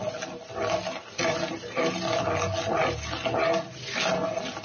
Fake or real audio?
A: real